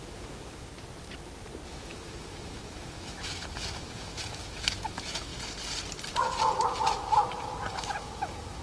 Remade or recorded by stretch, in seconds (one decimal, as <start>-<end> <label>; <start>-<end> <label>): 0.0-0.7 remade; 0.7-1.7 recorded; 1.7-5.3 remade; 5.3-7.7 recorded; 7.7-8.6 remade